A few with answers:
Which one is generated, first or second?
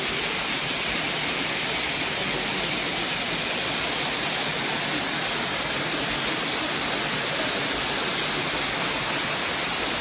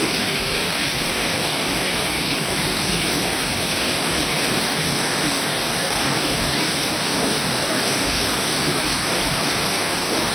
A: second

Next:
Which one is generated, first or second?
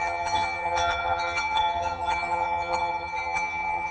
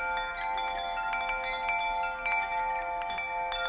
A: first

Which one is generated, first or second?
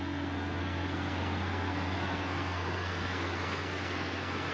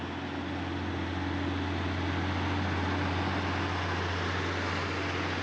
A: first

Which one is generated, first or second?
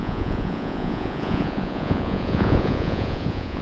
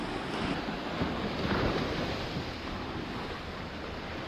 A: first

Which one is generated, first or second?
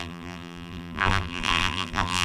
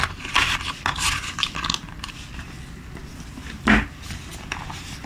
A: first